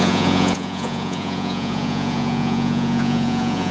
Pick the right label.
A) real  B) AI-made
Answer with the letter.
B